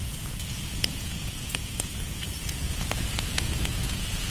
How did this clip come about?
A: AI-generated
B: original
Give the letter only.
A